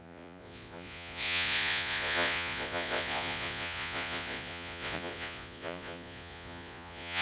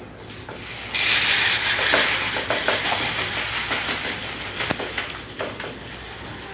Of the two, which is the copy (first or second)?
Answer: first